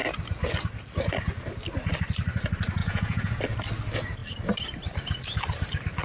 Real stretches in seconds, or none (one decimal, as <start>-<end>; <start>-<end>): 0.0-2.8; 3.4-6.0

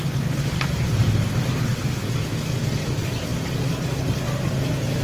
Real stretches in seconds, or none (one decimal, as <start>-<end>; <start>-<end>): 0.0-5.0

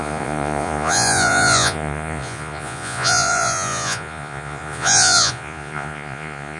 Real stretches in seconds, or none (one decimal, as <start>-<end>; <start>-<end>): none